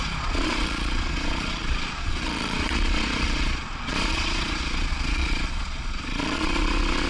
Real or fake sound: fake